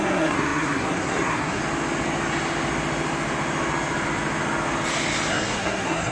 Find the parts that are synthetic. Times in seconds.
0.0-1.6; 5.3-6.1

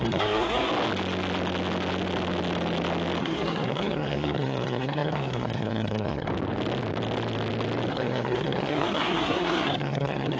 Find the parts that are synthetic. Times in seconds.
0.0-0.7; 3.2-6.3; 7.9-10.4

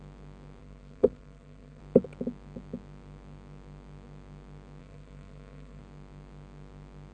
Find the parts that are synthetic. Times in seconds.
0.6-1.8; 4.8-5.8